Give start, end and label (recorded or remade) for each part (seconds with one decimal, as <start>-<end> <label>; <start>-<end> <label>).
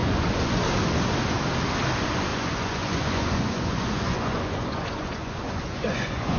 0.0-0.6 remade; 0.6-2.3 recorded; 2.3-6.4 remade